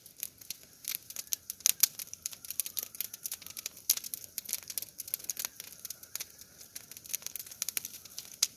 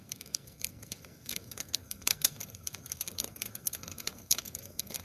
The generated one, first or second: second